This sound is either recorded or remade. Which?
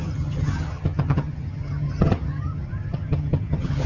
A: remade